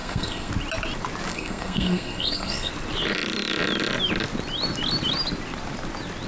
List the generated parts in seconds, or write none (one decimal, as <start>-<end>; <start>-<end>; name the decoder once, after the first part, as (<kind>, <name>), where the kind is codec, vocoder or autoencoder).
0.0-0.5 (codec, SNAC); 1.3-2.7